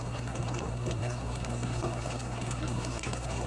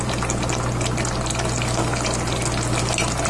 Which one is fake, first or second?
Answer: first